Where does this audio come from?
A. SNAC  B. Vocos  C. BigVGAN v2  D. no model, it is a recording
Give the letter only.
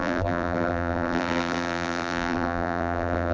C